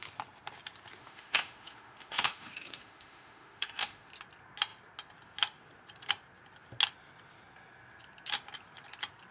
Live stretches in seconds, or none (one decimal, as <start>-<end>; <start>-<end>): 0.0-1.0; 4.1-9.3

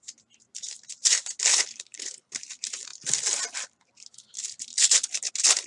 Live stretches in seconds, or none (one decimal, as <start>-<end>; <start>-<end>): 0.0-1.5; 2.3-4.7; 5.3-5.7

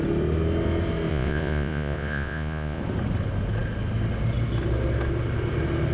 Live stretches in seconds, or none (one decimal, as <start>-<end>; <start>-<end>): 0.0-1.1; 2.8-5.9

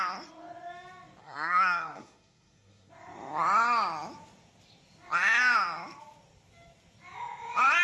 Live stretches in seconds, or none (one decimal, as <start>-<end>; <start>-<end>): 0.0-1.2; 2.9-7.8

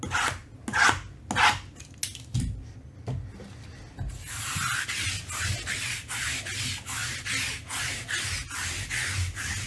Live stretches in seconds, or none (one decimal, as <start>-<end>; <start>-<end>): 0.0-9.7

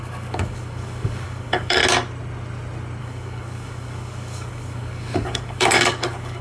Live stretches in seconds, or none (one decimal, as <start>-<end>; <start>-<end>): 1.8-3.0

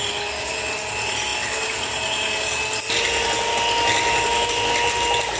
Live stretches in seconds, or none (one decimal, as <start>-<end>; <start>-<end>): 0.0-5.4

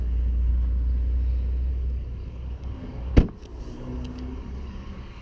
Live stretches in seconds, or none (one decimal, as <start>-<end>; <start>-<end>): 0.5-1.7; 3.1-3.6